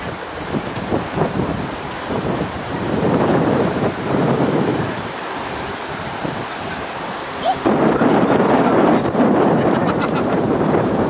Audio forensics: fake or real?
fake